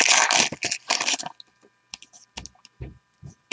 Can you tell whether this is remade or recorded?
recorded